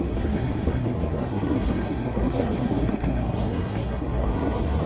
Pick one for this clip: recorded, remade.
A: remade